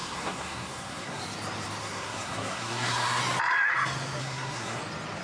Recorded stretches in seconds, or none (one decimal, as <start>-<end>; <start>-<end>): 1.2-1.8; 3.2-4.2; 4.8-5.2